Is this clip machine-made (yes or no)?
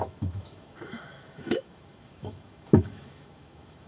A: yes